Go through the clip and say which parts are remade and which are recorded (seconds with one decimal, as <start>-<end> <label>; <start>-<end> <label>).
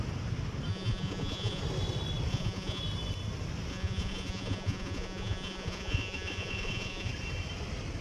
0.0-0.7 recorded; 0.7-1.6 remade; 1.6-2.3 recorded; 2.3-2.8 remade; 2.8-3.7 recorded; 3.7-7.1 remade; 7.1-8.0 recorded